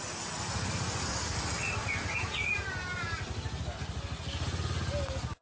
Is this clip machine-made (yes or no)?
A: no